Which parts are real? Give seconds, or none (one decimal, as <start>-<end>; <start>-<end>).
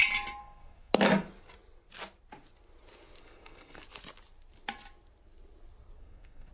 0.0-0.4; 0.9-3.2; 3.8-6.0